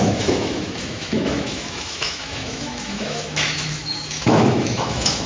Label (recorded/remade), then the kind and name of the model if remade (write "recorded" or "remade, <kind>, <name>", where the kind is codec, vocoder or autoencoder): remade, autoencoder, DAC-VAE